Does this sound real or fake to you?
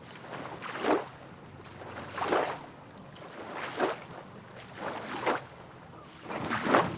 real